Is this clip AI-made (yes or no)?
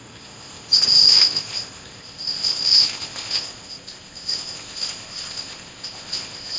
yes